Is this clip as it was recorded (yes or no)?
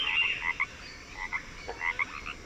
yes